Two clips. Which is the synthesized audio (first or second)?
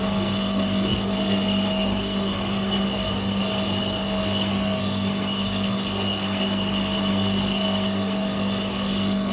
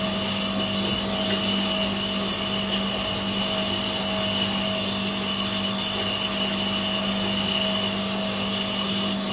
first